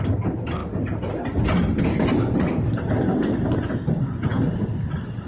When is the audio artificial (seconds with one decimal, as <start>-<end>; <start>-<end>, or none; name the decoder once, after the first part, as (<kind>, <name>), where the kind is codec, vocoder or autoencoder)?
none